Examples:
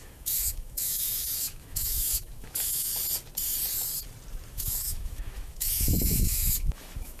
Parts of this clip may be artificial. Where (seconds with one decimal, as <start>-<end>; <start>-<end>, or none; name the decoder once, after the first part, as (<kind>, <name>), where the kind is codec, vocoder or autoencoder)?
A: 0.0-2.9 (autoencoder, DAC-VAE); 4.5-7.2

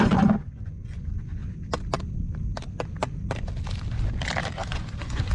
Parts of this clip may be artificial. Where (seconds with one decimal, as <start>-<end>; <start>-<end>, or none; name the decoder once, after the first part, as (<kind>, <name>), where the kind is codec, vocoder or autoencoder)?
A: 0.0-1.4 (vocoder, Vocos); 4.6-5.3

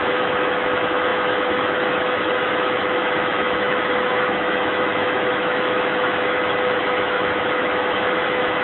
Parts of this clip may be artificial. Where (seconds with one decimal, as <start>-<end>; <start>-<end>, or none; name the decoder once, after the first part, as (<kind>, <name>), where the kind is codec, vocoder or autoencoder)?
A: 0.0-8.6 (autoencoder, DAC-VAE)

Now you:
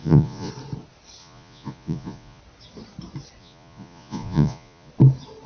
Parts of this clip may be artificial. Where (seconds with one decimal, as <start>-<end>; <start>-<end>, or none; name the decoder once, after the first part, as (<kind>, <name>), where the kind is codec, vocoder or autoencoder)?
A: 0.0-0.5 (vocoder, Vocos); 1.2-2.4; 3.4-4.9